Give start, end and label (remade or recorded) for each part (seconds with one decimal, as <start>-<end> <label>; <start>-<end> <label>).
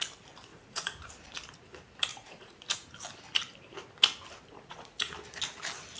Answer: 0.0-0.5 recorded; 0.5-1.1 remade; 1.1-2.1 recorded; 2.1-2.6 remade; 2.6-4.5 recorded; 4.5-5.1 remade; 5.1-6.0 recorded